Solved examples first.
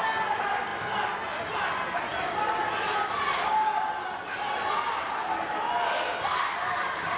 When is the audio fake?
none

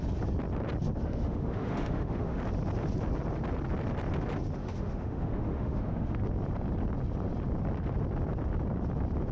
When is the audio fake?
1.0-2.4 (autoencoder, DAC-VAE); 4.6-6.2

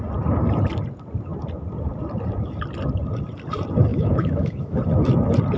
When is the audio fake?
3.9-4.8 (autoencoder, DAC-VAE)

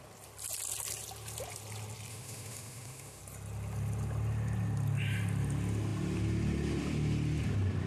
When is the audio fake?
2.1-3.2 (autoencoder, DAC-VAE)

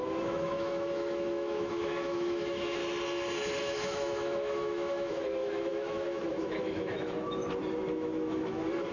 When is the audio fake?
0.0-2.8 (autoencoder, DAC-VAE); 3.6-7.4; 7.9-8.9

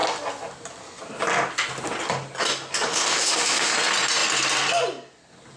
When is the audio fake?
2.9-3.7 (autoencoder, DAC-VAE)

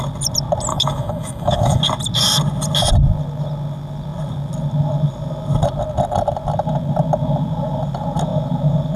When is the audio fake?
0.7-1.8 (autoencoder, DAC-VAE)

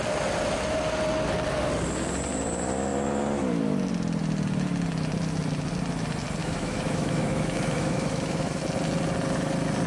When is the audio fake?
6.4-8.6 (autoencoder, DAC-VAE)